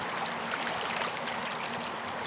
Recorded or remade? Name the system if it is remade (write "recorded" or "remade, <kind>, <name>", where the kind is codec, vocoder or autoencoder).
recorded